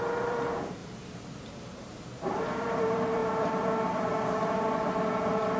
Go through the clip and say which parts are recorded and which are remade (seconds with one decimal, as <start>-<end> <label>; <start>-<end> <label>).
0.0-5.6 remade